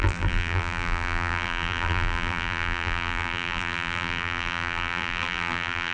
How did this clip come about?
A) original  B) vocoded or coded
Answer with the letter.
B